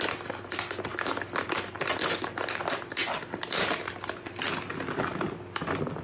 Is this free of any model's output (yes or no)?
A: yes